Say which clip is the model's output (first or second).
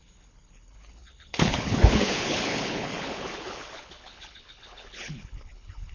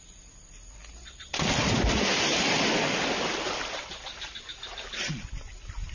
first